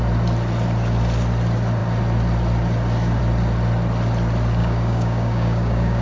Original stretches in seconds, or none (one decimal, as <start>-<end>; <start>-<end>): 0.0-4.6